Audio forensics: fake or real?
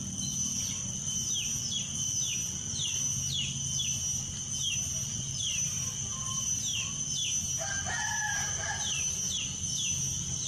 real